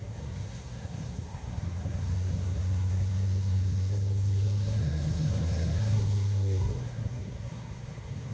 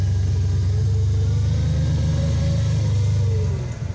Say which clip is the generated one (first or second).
first